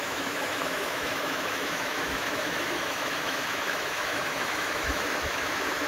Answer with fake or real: fake